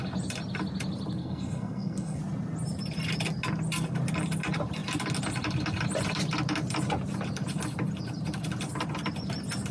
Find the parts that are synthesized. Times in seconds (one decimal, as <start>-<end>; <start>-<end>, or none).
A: 1.2-2.2